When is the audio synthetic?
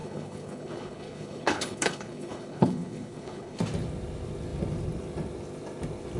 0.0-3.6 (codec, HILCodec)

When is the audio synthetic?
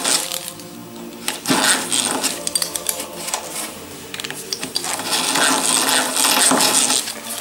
none